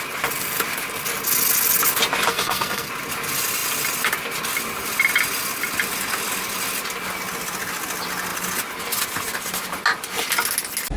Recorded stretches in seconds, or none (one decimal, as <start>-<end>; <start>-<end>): 0.0-2.3; 2.9-11.0